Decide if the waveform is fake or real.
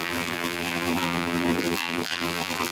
fake